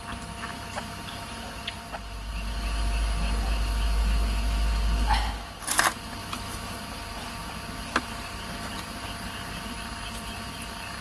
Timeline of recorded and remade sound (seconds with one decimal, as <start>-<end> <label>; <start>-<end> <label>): 0.0-6.2 recorded; 6.2-6.7 remade; 6.7-11.0 recorded